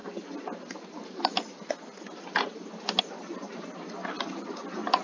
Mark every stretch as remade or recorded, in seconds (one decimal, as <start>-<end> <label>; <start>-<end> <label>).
0.0-5.0 recorded